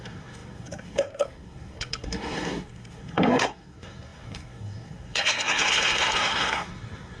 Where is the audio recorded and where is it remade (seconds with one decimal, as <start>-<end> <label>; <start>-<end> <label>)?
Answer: 0.0-7.2 remade